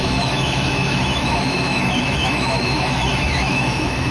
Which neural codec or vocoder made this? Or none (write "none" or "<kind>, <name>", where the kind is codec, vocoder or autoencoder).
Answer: autoencoder, DAC-VAE